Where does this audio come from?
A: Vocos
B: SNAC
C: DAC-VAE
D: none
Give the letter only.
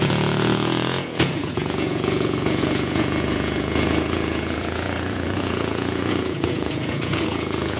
A